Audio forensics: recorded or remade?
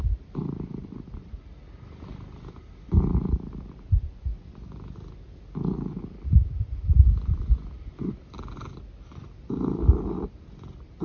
recorded